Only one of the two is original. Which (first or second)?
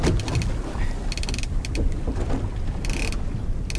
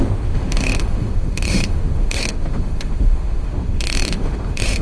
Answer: first